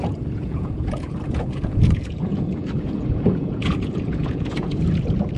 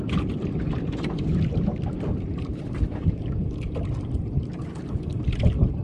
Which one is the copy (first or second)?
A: first